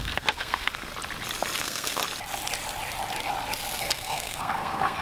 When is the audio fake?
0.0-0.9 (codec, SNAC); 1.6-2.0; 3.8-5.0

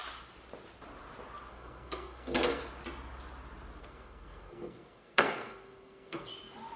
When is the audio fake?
1.5-2.6 (codec, SNAC); 3.8-6.3

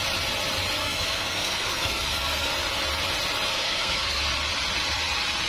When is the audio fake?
0.8-2.5 (codec, SNAC); 3.5-4.2

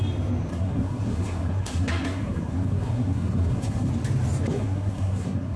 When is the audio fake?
0.5-3.9 (codec, SNAC); 4.5-5.6

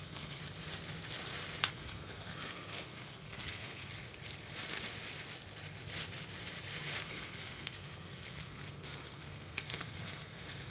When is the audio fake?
0.0-0.4 (codec, SNAC); 1.7-3.9; 7.1-10.7